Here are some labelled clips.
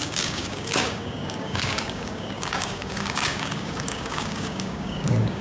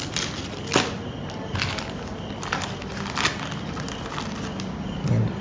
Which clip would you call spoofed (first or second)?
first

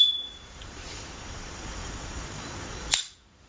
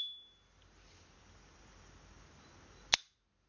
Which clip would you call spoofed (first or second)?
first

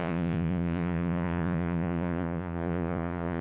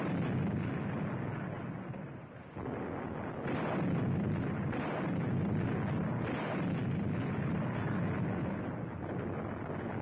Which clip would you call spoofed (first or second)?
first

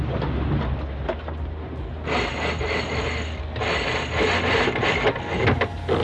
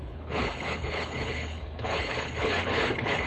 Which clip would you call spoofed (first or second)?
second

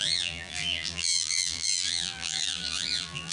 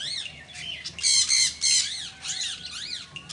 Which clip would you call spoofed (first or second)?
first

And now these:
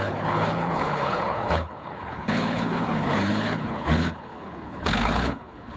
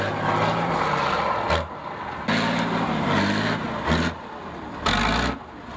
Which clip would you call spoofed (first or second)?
first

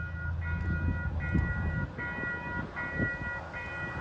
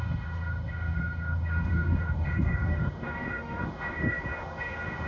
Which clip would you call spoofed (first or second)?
second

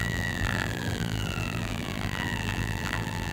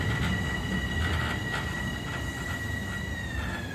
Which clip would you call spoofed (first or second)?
first